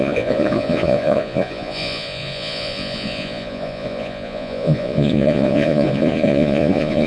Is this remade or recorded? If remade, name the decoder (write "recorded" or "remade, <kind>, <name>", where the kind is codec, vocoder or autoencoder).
remade, vocoder, Vocos